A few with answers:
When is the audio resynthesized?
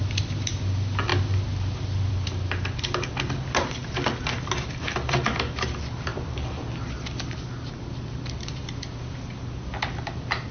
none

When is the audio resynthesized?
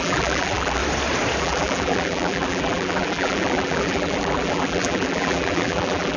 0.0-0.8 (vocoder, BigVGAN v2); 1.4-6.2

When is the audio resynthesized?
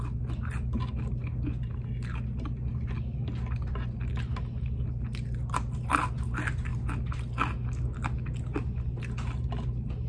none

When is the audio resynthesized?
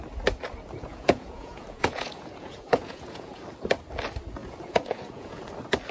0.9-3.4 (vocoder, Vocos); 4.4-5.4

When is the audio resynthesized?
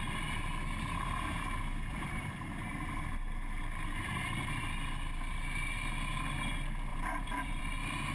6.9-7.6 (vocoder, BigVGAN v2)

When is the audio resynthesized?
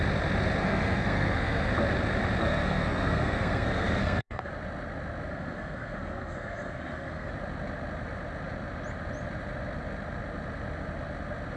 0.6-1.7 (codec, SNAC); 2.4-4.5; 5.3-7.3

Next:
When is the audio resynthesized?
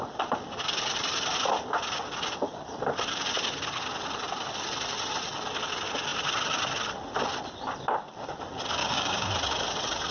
8.8-9.3 (codec, DAC)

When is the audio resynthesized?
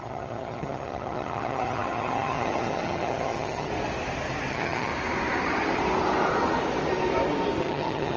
0.0-3.7 (vocoder, HiFi-GAN); 4.5-4.9; 7.6-8.2